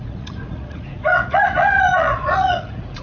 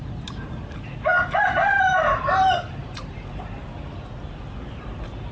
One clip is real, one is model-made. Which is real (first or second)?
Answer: second